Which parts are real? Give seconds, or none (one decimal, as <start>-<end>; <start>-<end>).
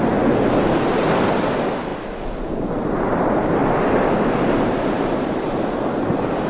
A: 0.0-6.5